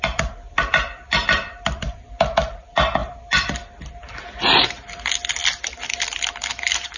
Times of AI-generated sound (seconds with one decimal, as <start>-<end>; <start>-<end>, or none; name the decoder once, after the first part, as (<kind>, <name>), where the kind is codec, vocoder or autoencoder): 0.0-7.0 (vocoder, BigVGAN v2)